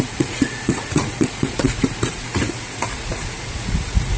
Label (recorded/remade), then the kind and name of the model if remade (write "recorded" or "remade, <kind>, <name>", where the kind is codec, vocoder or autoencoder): remade, vocoder, Vocos